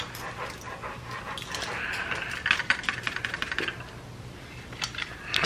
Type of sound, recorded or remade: recorded